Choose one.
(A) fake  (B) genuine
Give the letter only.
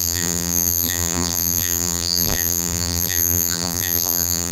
A